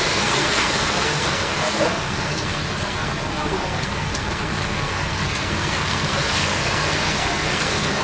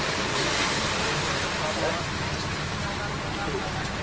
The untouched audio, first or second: second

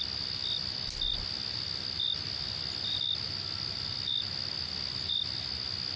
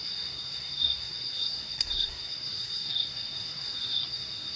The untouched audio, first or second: first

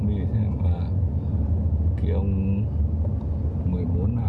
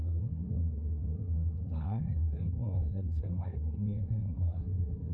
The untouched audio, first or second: first